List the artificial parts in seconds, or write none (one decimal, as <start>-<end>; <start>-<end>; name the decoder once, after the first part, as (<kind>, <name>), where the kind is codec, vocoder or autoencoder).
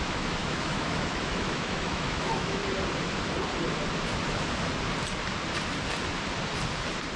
0.0-2.6 (autoencoder, DAC-VAE)